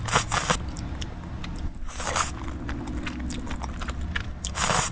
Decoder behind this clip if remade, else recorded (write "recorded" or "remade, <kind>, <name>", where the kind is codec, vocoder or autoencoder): recorded